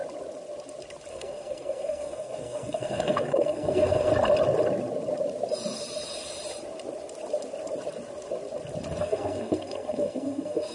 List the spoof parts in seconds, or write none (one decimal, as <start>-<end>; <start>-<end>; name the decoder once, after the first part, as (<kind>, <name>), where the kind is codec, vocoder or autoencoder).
1.1-4.1 (codec, SNAC); 9.0-10.7